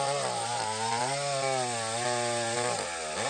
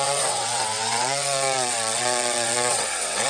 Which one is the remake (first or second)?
second